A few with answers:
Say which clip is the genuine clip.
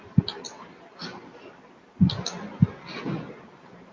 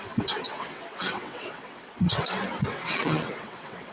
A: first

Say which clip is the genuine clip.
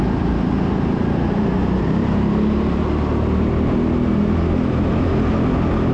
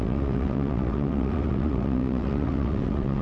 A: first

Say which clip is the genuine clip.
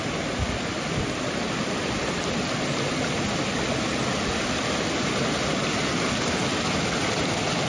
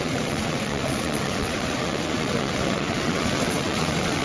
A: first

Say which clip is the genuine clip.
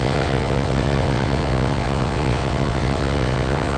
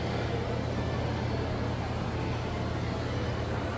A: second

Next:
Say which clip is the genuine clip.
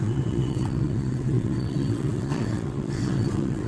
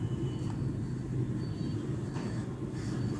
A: second